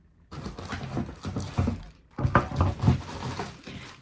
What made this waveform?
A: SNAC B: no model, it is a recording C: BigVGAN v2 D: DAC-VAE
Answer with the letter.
B